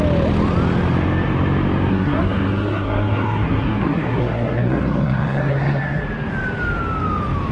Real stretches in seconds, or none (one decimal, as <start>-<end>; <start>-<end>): 0.0-1.9; 6.0-7.5